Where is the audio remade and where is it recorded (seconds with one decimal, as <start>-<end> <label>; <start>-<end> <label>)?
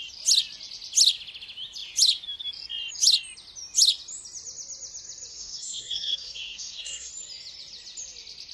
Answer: 0.0-5.3 recorded; 5.3-7.1 remade; 7.1-8.5 recorded